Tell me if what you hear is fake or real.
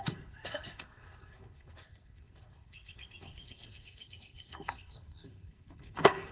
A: fake